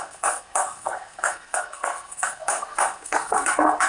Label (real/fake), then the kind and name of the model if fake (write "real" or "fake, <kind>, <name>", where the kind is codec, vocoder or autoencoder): fake, codec, SNAC